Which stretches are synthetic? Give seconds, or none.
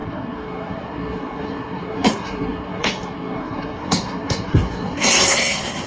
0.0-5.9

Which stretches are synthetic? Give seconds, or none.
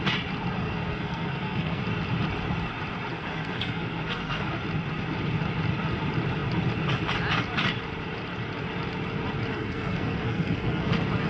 0.6-1.8; 3.1-4.5; 9.5-10.9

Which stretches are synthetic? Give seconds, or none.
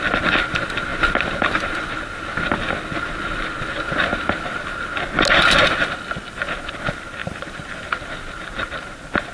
7.2-7.9